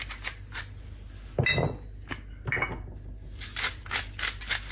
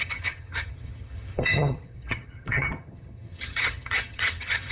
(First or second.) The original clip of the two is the first